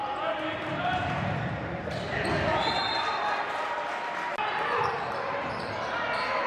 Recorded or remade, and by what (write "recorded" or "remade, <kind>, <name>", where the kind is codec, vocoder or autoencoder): recorded